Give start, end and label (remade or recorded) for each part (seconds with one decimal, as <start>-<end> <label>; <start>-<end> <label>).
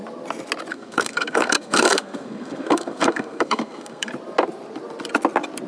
0.0-0.7 recorded; 0.7-4.1 remade; 4.1-5.7 recorded